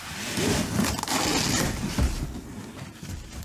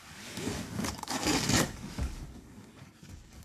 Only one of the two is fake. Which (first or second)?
second